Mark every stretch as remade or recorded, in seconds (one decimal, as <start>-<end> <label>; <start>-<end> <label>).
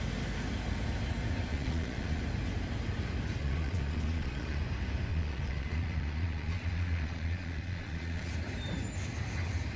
0.0-1.5 recorded; 1.5-2.2 remade; 2.2-3.4 recorded; 3.4-4.6 remade; 4.6-5.1 recorded; 5.1-8.3 remade; 8.3-9.8 recorded